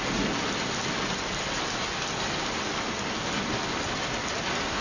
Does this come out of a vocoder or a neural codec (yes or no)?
no